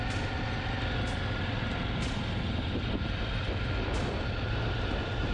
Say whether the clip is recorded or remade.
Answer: recorded